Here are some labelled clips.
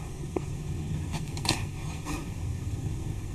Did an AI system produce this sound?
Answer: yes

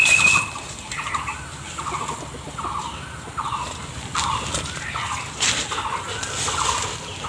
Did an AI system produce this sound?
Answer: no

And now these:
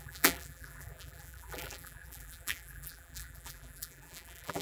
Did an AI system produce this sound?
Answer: yes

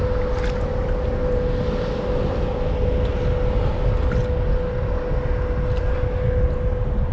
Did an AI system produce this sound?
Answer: no